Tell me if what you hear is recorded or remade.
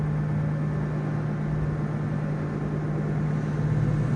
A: recorded